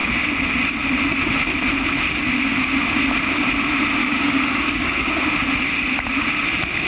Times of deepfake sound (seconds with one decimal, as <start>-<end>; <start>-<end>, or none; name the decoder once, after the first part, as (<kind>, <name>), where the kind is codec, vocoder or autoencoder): 4.0-5.1 (codec, DAC)